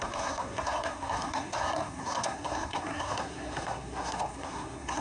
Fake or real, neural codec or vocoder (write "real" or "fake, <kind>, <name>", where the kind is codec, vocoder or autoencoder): fake, codec, SNAC